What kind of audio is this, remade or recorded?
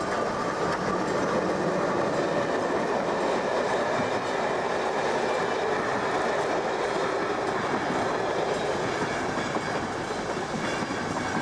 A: recorded